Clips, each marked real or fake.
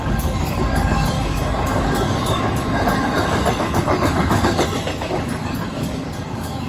fake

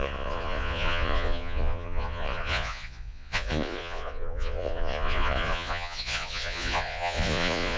fake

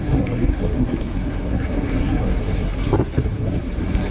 fake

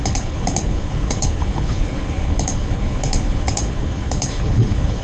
fake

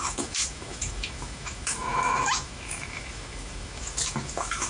fake